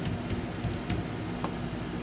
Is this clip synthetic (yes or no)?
no